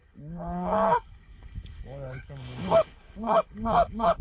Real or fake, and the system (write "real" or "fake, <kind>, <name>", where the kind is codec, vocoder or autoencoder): fake, codec, HILCodec